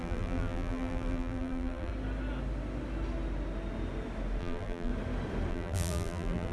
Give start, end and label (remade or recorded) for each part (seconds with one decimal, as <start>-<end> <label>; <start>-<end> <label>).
0.0-1.9 remade; 1.9-4.4 recorded; 4.4-4.9 remade; 4.9-5.5 recorded; 5.5-6.5 remade